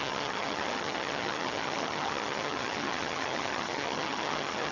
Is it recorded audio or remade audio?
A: remade